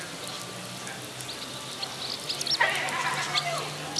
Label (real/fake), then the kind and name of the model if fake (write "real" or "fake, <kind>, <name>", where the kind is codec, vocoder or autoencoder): real